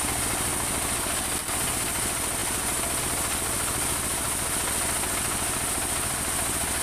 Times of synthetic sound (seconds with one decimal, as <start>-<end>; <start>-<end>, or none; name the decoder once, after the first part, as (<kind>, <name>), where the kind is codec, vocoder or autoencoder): none